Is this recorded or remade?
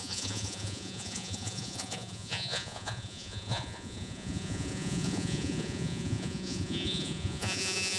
remade